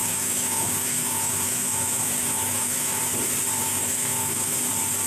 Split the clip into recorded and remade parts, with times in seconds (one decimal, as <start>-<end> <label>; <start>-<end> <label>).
0.0-3.0 remade; 3.0-3.6 recorded; 3.6-4.6 remade; 4.6-5.1 recorded